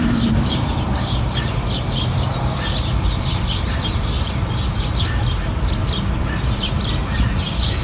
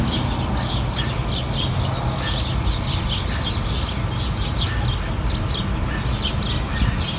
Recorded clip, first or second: second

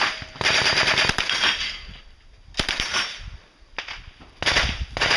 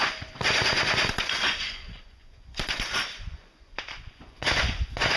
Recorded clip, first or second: first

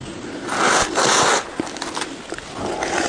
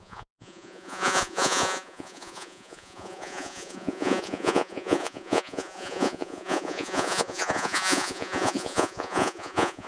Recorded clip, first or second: first